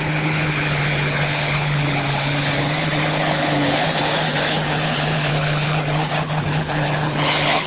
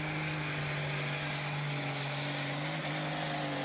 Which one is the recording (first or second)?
second